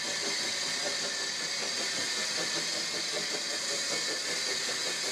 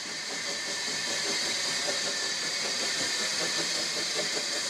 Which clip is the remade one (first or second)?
second